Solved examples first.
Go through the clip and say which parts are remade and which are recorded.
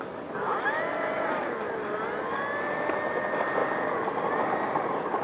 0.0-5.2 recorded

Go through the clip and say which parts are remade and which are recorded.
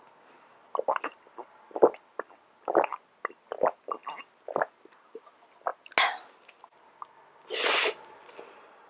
0.0-8.9 recorded